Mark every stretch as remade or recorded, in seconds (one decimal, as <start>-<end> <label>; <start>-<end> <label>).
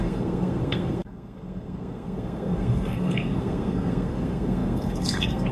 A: 0.0-5.5 remade